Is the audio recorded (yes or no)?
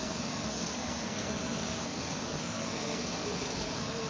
no